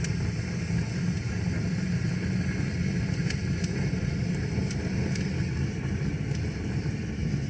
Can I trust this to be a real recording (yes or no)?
yes